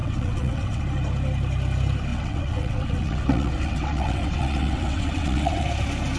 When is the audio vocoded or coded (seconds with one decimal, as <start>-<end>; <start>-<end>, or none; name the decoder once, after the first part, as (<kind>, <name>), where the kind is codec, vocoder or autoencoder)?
0.0-0.8 (vocoder, WaveNeXt); 2.1-5.7